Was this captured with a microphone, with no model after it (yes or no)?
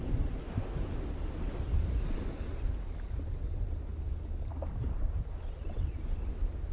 yes